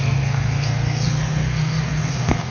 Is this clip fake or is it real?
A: fake